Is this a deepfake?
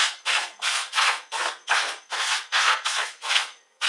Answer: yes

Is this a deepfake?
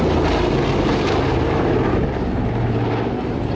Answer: no